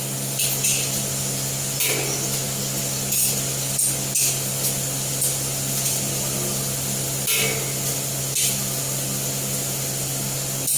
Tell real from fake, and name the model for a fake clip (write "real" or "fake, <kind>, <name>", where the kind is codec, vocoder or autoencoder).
real